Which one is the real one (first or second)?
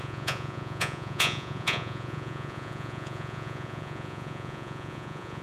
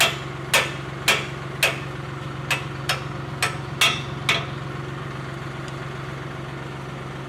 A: second